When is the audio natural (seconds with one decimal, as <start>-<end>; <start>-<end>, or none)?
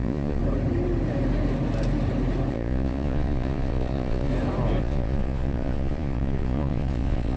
0.4-2.5; 4.3-4.8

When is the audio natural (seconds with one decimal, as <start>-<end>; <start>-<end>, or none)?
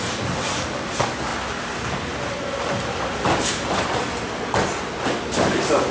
0.0-5.9